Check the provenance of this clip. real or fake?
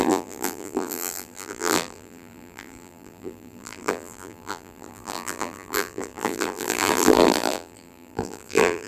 fake